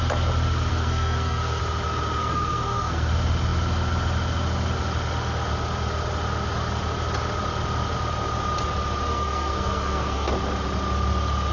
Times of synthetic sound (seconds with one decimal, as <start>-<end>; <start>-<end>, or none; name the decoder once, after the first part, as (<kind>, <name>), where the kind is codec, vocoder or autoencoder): 0.7-1.6 (codec, SNAC); 2.2-3.1; 9.1-10.3